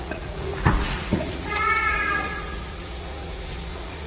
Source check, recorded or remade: remade